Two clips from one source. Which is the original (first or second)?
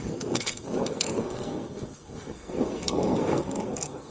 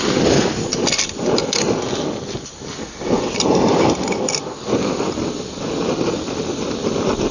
second